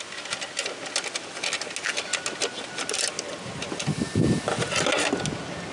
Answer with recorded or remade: recorded